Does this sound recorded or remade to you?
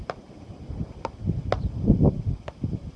recorded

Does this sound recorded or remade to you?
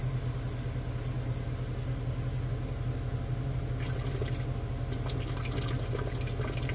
recorded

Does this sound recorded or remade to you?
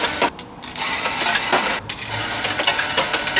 recorded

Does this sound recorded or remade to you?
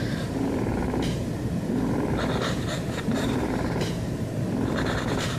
remade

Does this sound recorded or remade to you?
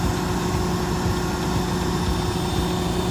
recorded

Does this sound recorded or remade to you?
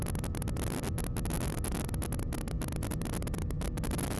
recorded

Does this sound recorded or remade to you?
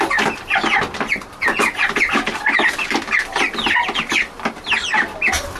recorded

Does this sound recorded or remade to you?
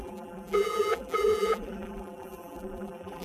remade